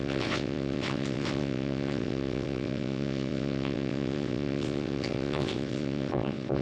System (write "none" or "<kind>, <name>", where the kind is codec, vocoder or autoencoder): vocoder, WaveNeXt